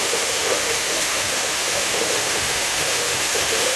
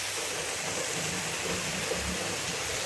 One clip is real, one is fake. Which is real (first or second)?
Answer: second